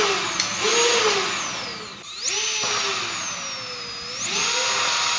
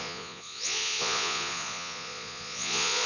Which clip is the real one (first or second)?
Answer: first